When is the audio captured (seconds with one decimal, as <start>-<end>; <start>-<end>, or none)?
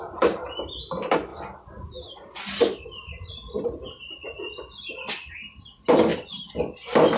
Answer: 1.3-5.1